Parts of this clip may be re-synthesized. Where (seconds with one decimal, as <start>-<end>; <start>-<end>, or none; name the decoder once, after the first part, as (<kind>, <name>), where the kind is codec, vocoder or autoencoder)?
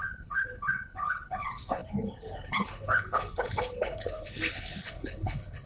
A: 0.0-5.7 (codec, HILCodec)